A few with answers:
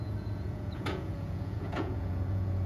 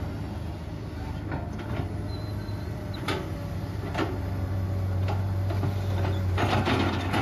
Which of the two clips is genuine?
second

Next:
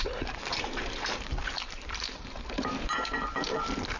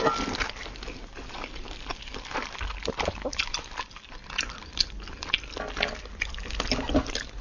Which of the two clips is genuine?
second